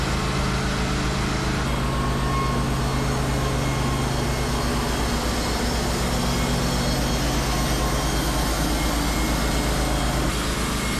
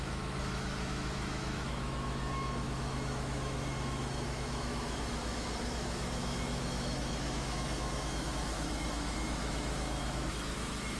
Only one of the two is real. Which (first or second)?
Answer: first